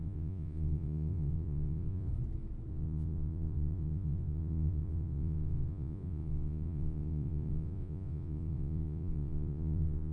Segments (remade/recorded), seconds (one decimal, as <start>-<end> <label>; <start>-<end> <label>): 0.0-2.1 remade; 2.1-2.7 recorded; 2.7-10.1 remade